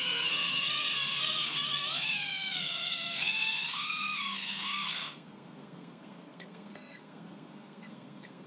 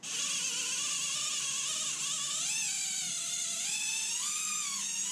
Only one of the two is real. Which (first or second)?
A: second